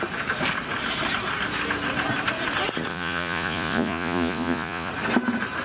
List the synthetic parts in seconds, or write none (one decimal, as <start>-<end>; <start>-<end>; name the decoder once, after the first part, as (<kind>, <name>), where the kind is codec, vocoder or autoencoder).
2.9-4.9 (vocoder, Vocos)